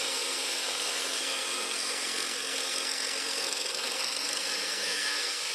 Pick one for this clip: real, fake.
fake